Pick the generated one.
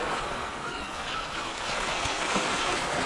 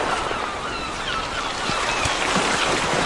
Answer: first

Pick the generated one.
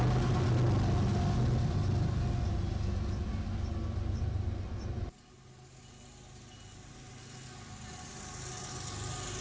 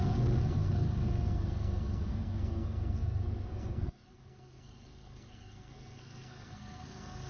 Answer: second